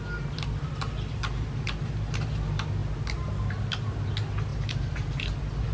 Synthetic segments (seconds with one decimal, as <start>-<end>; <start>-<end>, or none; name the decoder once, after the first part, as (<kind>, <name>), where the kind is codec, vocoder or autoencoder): none